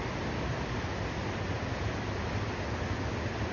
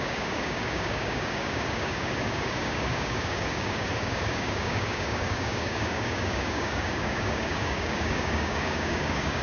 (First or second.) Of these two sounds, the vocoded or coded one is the second